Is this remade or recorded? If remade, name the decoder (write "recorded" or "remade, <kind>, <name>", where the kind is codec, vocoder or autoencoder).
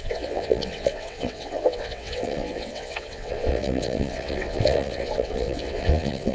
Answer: remade, vocoder, WaveNeXt